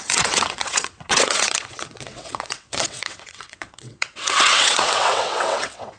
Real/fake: fake